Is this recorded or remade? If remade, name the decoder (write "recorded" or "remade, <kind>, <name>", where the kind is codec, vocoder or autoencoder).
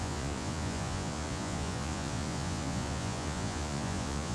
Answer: remade, vocoder, Vocos